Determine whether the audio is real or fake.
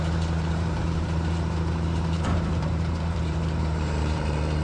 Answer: fake